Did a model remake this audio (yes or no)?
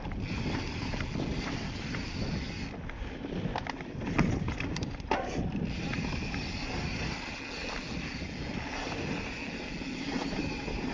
no